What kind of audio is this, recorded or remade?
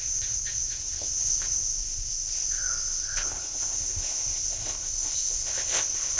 remade